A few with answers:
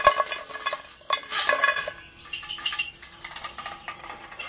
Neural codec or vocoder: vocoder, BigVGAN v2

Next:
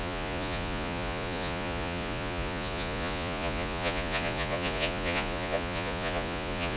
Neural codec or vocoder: vocoder, Vocos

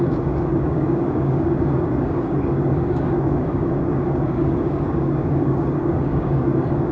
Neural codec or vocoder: codec, DAC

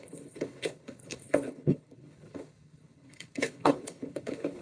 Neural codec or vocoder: codec, HILCodec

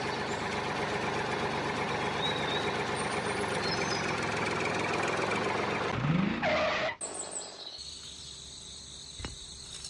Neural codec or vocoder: none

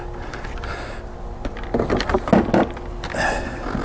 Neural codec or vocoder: none